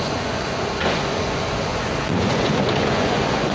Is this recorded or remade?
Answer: remade